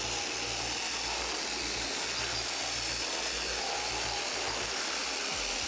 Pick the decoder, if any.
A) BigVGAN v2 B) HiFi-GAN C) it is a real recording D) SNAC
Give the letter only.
C